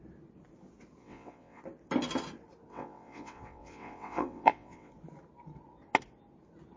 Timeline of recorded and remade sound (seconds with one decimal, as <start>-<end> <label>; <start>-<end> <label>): 0.0-1.0 recorded; 1.0-1.6 remade; 1.6-2.7 recorded; 2.7-4.9 remade; 4.9-6.8 recorded